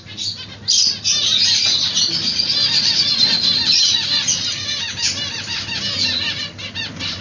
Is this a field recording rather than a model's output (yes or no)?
yes